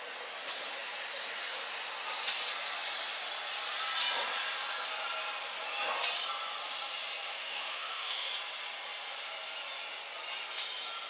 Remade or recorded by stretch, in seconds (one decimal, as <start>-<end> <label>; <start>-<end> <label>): 0.0-7.3 recorded; 7.3-8.3 remade; 8.3-11.1 recorded